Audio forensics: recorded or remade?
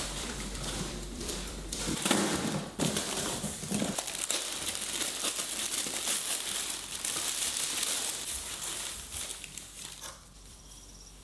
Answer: remade